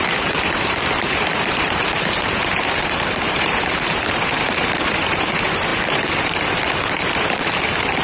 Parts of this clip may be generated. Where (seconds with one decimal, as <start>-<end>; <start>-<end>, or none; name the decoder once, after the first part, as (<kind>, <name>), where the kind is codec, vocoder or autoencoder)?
0.0-8.0 (vocoder, BigVGAN v2)